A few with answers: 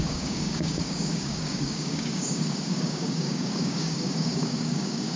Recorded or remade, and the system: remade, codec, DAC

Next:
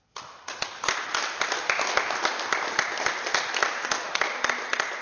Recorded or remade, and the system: recorded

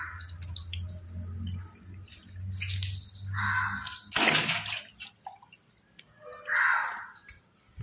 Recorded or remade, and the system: recorded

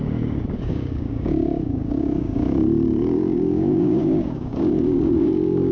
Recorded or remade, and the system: remade, codec, DAC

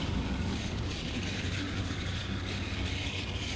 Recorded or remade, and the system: remade, codec, DAC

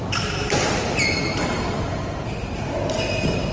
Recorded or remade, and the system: recorded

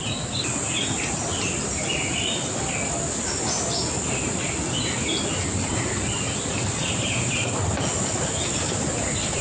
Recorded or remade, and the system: recorded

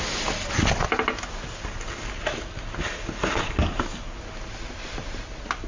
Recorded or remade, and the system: recorded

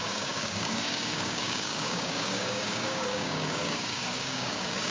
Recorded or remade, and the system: remade, codec, DAC